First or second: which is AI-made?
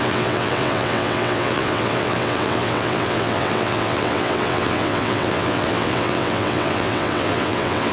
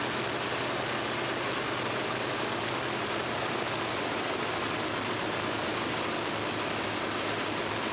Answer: first